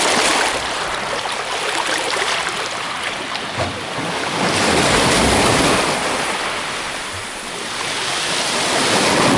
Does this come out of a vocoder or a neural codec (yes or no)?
no